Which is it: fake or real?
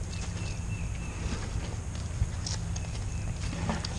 real